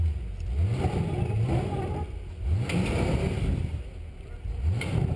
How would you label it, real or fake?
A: real